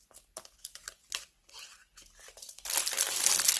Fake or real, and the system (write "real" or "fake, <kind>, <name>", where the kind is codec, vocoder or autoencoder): real